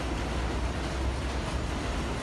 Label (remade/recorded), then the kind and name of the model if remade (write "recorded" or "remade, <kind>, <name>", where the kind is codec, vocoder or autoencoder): recorded